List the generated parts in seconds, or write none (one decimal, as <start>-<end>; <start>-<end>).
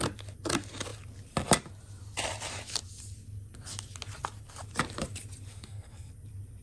5.5-6.1